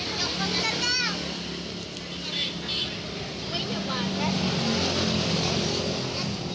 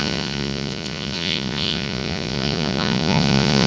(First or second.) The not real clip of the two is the second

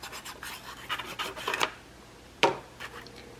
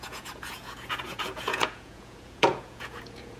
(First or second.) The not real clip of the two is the second